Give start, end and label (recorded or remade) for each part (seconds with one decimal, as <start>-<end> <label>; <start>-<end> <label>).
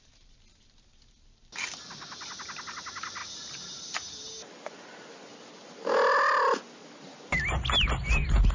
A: 0.0-8.5 recorded